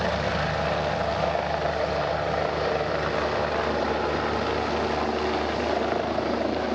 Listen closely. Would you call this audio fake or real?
real